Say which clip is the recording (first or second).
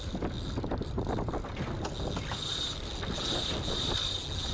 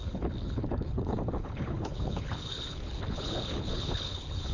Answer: first